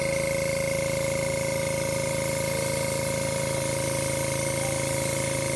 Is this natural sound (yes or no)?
yes